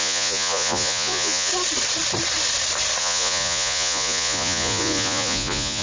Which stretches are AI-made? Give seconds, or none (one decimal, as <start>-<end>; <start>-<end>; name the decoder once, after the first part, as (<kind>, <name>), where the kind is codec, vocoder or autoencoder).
0.0-1.5 (vocoder, Vocos); 3.0-5.8